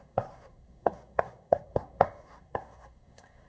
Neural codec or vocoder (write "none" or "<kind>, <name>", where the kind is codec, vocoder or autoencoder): codec, SNAC